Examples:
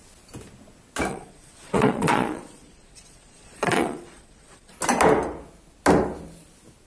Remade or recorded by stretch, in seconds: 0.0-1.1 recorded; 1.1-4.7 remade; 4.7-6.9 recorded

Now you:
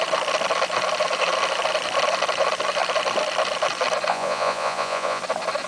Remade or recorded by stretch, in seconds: 0.0-4.1 recorded; 4.1-5.2 remade; 5.2-5.7 recorded

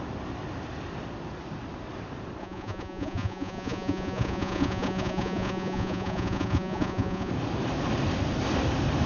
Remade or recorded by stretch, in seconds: 0.0-2.4 recorded; 2.4-7.3 remade; 7.3-9.1 recorded

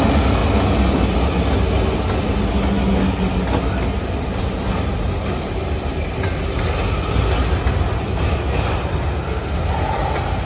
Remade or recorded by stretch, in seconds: 0.0-10.5 recorded

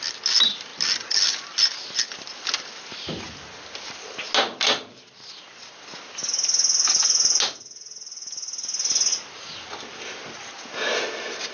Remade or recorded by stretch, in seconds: 0.0-11.5 recorded

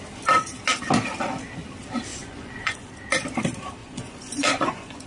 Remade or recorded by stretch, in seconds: 0.0-2.1 recorded; 2.1-2.9 remade; 2.9-3.8 recorded; 3.8-5.1 remade

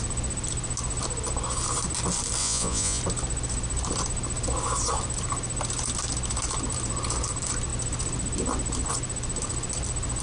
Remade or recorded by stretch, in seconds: 0.0-2.4 recorded; 2.4-3.0 remade; 3.0-10.2 recorded